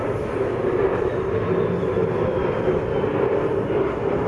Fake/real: real